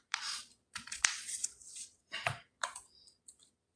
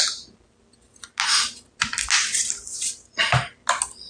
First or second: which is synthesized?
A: first